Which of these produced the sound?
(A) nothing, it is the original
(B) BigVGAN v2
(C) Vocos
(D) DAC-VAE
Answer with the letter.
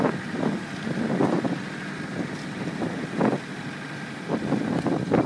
A